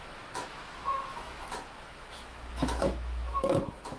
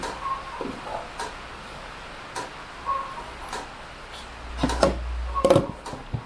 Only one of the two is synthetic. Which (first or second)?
first